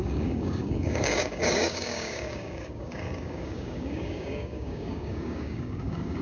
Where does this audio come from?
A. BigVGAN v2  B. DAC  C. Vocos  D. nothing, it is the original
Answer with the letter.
B